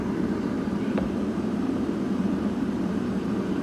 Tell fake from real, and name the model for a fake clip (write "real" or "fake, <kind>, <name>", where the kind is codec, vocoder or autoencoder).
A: fake, vocoder, BigVGAN v2